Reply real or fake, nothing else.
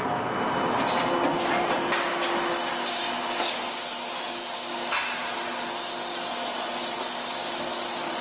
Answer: real